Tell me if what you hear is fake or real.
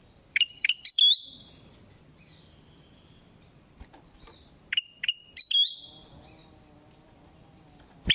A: fake